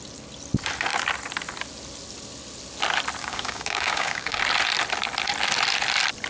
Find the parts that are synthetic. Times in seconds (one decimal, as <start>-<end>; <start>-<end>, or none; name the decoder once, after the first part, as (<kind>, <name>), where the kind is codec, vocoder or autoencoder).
3.2-4.4 (codec, DAC)